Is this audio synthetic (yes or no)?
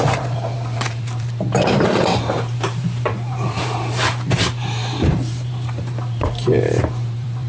yes